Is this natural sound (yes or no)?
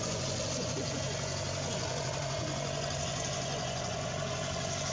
no